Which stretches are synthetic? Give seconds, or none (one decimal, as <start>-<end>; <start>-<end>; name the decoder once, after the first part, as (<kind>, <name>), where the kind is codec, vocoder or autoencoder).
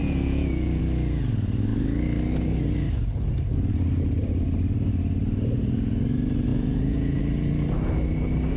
0.0-0.8 (vocoder, Vocos); 6.5-7.2